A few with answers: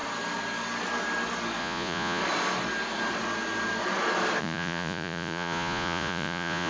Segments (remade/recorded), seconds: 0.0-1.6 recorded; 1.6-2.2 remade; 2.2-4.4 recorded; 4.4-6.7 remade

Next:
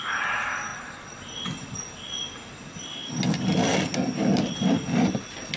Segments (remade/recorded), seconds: 0.0-0.7 recorded; 0.7-1.2 remade; 1.2-5.6 recorded

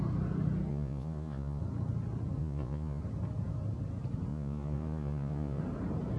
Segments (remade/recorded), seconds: 0.0-0.7 recorded; 0.7-1.6 remade; 1.6-2.4 recorded; 2.4-3.0 remade; 3.0-4.3 recorded; 4.3-5.6 remade; 5.6-6.2 recorded